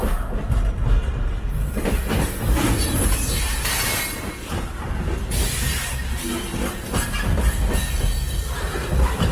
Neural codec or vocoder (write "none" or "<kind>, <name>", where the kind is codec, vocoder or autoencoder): none